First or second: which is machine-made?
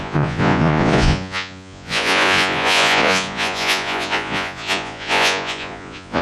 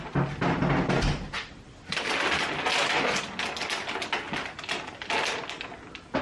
first